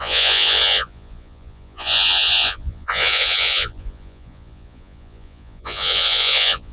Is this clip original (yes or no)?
no